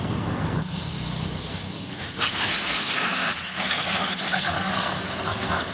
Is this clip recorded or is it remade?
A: remade